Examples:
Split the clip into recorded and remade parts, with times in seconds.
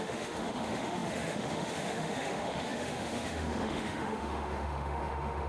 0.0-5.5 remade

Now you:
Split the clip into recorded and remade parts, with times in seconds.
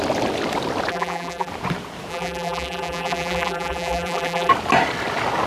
0.0-0.9 recorded; 0.9-1.5 remade; 1.5-2.1 recorded; 2.1-4.5 remade; 4.5-5.5 recorded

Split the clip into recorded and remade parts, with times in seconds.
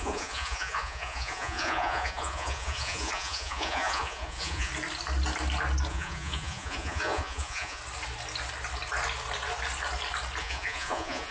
0.0-4.7 remade; 4.7-5.9 recorded; 5.9-7.8 remade; 7.8-10.4 recorded; 10.4-11.3 remade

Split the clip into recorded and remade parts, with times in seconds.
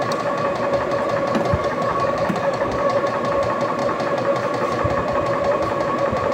0.0-1.6 recorded; 1.6-3.0 remade; 3.0-6.3 recorded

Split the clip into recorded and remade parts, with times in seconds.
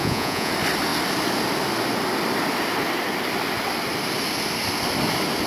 0.0-0.5 remade; 0.5-5.5 recorded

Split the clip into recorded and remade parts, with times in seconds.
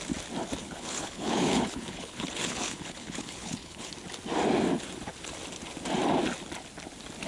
0.0-0.6 recorded; 0.6-3.9 remade; 3.9-7.3 recorded